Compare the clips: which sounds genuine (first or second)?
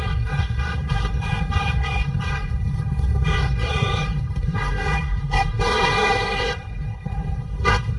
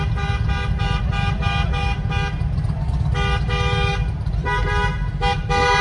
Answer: second